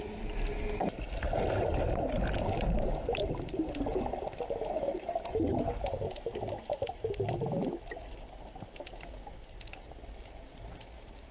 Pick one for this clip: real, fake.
real